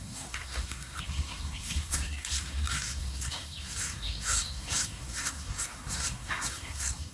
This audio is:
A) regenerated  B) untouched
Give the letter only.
A